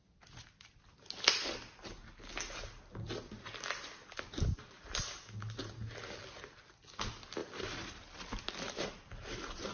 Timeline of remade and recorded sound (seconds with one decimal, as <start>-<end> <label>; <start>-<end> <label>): 0.0-9.7 recorded